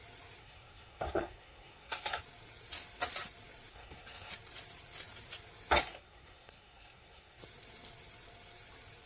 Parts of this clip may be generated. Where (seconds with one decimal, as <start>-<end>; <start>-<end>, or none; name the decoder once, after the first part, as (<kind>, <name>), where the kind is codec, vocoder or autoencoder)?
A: 0.4-2.2 (codec, SNAC); 3.7-4.3; 5.8-7.4